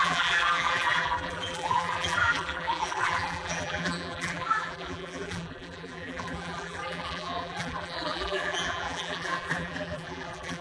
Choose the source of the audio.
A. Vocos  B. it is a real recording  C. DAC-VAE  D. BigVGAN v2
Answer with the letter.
D